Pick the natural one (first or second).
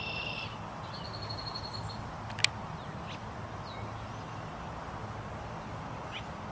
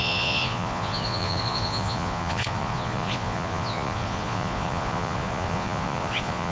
first